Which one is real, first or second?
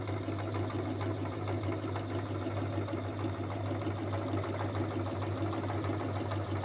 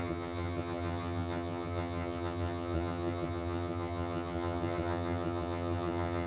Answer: first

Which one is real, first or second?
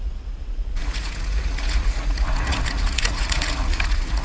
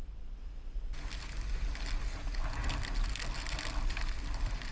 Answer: second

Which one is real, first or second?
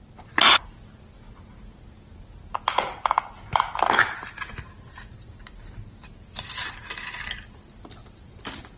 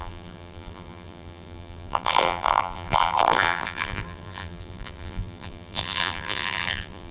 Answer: first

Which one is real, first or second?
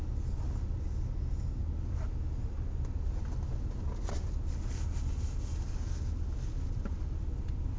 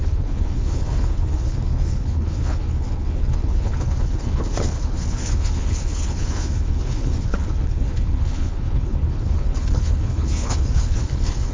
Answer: first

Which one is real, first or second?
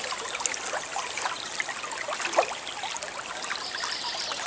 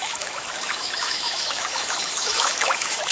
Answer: first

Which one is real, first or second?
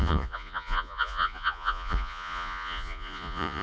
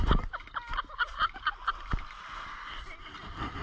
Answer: second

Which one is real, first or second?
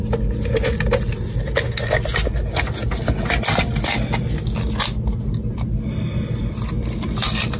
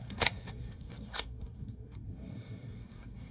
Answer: first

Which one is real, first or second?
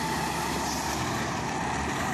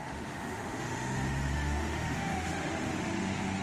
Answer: first